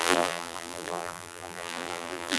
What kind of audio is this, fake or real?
fake